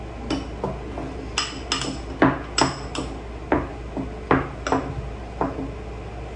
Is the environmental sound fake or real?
real